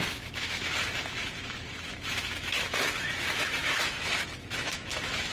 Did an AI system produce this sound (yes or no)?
yes